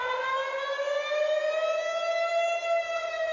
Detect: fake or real real